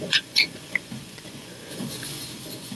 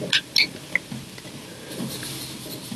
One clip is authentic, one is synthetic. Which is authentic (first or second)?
second